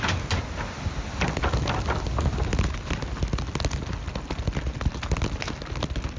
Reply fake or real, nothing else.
real